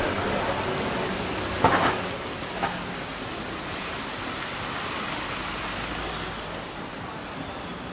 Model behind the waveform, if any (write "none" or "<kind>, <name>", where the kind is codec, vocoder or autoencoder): none